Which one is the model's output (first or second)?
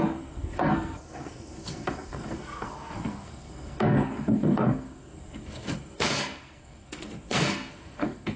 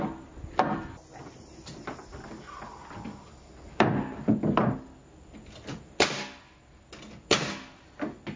first